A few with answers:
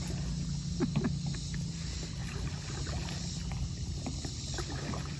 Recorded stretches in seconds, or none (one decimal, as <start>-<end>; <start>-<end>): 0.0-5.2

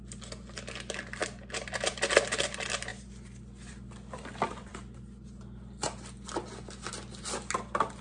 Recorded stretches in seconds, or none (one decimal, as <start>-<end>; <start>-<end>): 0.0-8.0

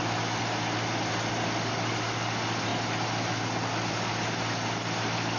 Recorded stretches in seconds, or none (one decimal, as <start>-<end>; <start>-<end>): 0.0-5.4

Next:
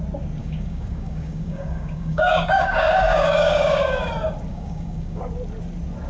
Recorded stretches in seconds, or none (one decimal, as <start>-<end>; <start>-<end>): 0.0-0.4; 4.1-4.5; 5.2-6.1

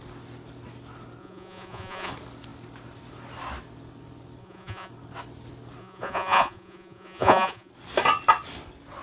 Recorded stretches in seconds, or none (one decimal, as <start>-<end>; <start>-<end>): 0.0-1.2; 2.1-4.4; 4.9-5.8; 7.7-9.0